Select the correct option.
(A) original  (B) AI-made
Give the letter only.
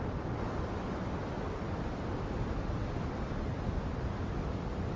A